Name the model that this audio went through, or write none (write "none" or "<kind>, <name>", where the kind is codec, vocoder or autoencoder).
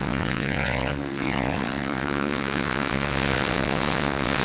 vocoder, WaveNeXt